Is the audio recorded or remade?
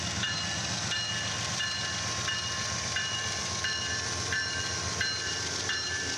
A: remade